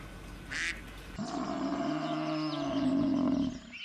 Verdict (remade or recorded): recorded